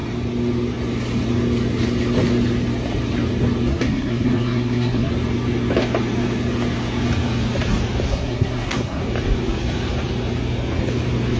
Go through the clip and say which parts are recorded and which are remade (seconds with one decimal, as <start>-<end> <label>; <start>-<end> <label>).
0.0-3.7 recorded; 3.7-5.1 remade; 5.1-8.1 recorded; 8.1-9.0 remade; 9.0-11.4 recorded